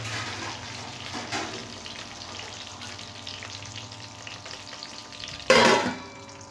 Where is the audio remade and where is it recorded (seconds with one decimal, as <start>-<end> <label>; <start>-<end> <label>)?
0.0-5.0 recorded; 5.0-6.5 remade